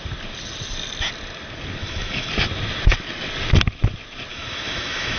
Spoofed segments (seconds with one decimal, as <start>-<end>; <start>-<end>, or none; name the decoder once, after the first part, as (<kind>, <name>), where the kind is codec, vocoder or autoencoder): 1.8-2.3 (autoencoder, DAC-VAE); 4.3-5.2